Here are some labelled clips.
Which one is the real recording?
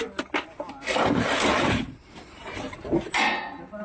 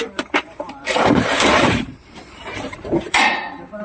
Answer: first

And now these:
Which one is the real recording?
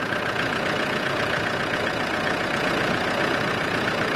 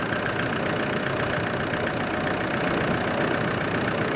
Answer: second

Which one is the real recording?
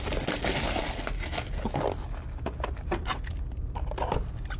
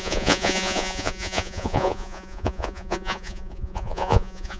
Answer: first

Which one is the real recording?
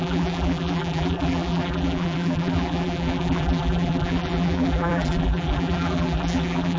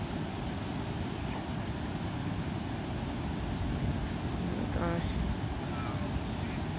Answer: second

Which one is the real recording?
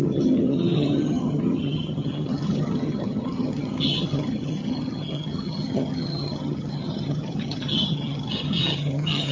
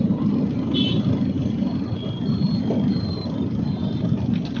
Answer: second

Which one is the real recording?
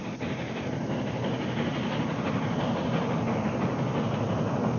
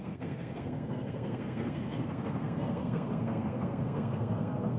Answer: first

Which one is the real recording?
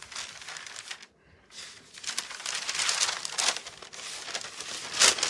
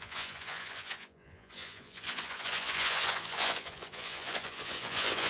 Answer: first